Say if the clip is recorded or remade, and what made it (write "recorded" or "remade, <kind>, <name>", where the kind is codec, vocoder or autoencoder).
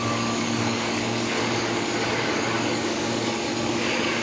remade, codec, DAC